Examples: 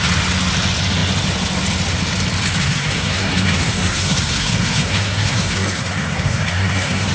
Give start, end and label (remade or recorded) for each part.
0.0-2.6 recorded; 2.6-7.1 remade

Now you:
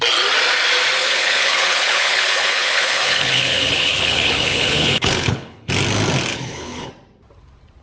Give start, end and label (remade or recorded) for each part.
0.0-1.0 recorded; 1.0-5.7 remade; 5.7-6.3 recorded; 6.3-6.9 remade; 6.9-7.8 recorded

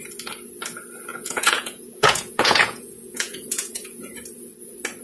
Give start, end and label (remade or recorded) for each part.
0.0-1.1 recorded; 1.1-4.1 remade; 4.1-5.0 recorded

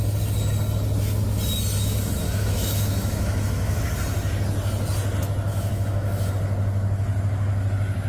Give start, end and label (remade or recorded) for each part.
0.0-1.8 recorded; 1.8-3.8 remade; 3.8-5.5 recorded; 5.5-6.3 remade; 6.3-8.1 recorded

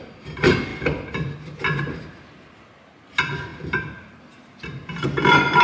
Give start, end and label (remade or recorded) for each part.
0.0-5.6 recorded

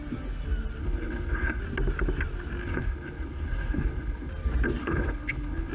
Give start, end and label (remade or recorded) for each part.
0.0-0.8 recorded; 0.8-1.6 remade; 1.6-2.6 recorded; 2.6-4.3 remade; 4.3-4.8 recorded; 4.8-5.7 remade